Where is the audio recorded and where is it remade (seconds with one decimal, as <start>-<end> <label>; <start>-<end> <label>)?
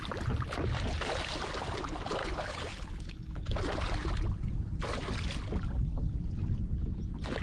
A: 0.0-2.2 recorded; 2.2-3.6 remade; 3.6-7.4 recorded